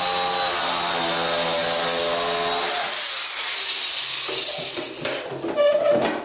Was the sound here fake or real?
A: real